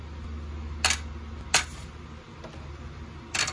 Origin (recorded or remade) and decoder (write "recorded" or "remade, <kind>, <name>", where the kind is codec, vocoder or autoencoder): recorded